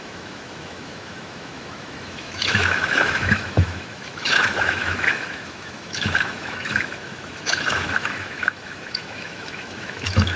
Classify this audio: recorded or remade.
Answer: remade